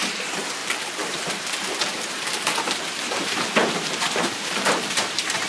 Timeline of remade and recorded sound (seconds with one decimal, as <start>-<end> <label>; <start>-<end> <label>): 0.0-5.5 remade